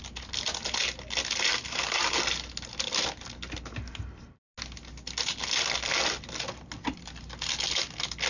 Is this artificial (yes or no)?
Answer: no